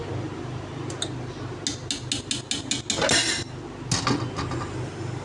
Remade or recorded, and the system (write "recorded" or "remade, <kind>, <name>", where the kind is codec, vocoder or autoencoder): recorded